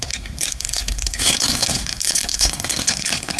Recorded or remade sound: remade